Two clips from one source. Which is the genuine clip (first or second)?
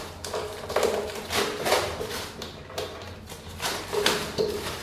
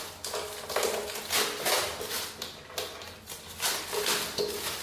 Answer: second